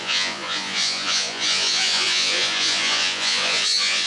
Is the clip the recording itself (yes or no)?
no